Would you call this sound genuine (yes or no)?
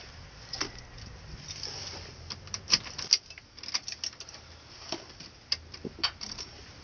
yes